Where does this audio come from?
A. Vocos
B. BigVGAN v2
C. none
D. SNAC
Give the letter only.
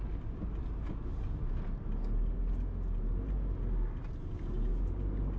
C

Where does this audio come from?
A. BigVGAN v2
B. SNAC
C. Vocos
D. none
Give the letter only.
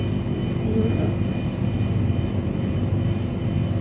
D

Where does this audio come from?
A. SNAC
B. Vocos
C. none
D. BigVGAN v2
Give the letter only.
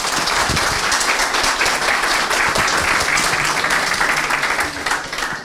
C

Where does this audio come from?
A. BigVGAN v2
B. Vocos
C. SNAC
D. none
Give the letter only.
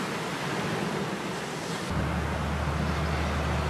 D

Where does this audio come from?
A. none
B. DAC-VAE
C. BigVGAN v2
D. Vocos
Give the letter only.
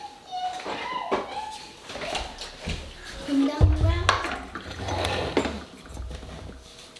A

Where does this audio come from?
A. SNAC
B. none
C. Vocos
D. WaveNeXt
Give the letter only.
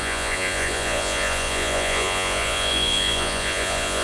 C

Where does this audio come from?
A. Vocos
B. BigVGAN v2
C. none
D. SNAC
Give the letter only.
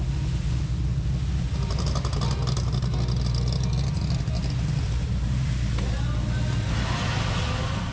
C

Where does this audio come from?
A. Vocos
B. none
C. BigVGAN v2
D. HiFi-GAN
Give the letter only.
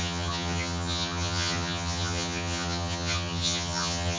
D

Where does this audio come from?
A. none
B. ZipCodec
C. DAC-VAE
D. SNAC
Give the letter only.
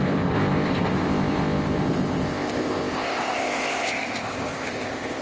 B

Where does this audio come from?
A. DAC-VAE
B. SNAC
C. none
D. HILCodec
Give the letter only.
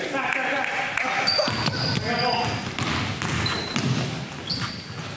C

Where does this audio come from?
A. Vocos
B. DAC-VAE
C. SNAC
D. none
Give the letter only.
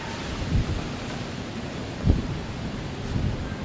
D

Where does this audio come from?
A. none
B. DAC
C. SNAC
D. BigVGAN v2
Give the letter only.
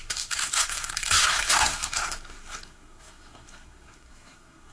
C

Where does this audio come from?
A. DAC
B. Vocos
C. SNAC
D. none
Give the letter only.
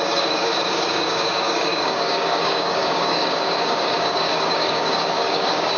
A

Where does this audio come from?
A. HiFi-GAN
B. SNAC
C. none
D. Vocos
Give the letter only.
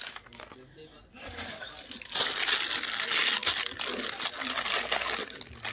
C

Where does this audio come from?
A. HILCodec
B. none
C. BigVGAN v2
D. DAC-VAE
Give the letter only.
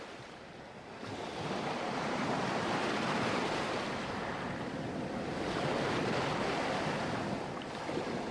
B